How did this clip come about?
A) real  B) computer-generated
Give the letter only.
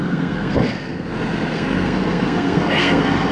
B